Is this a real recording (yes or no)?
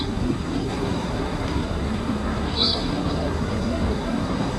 no